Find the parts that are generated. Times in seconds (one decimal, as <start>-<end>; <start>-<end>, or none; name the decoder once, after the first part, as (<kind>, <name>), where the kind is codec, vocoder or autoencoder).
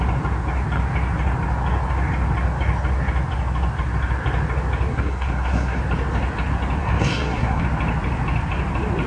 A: 4.9-5.8 (codec, SNAC); 6.8-7.6